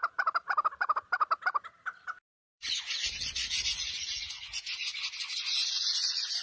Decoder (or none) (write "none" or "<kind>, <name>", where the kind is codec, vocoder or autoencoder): vocoder, BigVGAN v2